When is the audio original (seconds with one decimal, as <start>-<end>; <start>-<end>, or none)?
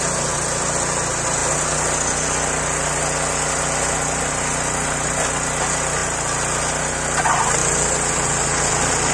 0.0-9.1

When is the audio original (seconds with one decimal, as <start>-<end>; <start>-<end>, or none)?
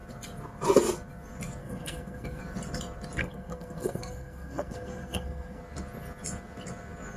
0.0-1.6; 2.4-3.2; 5.6-7.2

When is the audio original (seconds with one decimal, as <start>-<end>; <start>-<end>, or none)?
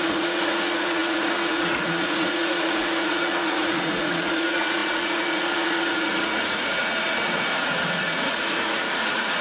none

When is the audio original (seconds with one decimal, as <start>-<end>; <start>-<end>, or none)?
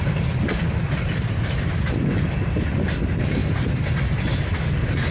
none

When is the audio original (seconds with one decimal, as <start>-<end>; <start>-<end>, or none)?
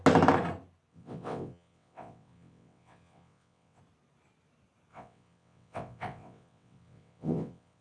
0.0-0.9; 3.8-4.9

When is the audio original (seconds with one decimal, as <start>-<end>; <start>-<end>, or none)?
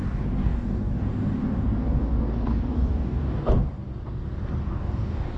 3.8-4.6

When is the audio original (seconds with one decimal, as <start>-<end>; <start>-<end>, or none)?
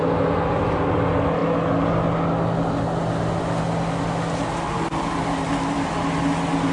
0.0-6.7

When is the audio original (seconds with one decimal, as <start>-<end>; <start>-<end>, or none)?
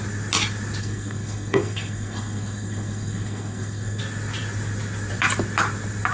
0.0-0.8; 4.0-6.1